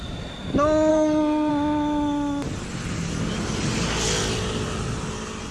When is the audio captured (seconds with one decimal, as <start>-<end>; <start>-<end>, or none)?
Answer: 0.0-0.9; 1.5-5.5